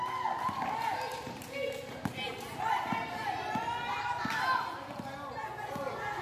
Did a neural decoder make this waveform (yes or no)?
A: no